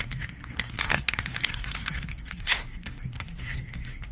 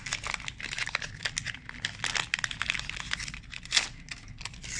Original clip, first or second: second